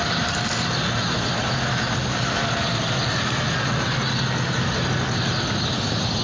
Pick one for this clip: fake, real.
real